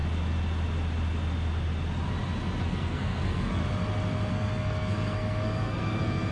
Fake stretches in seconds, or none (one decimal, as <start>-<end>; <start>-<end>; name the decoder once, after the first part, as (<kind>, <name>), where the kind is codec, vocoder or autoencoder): 2.6-3.6 (codec, SNAC); 4.3-6.3